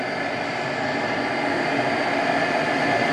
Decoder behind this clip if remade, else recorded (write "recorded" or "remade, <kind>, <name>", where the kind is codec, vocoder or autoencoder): recorded